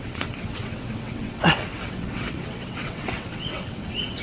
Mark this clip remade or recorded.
remade